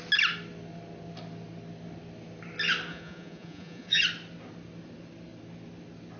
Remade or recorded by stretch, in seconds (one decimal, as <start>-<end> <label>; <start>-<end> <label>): 0.0-2.9 recorded; 2.9-4.0 remade; 4.0-6.2 recorded